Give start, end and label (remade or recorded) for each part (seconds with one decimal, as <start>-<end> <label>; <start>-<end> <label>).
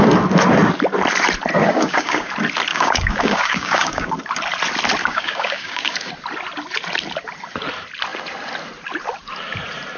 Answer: 0.0-1.6 recorded; 1.6-2.3 remade; 2.3-2.7 recorded; 2.7-4.1 remade; 4.1-5.0 recorded; 5.0-6.1 remade; 6.1-10.0 recorded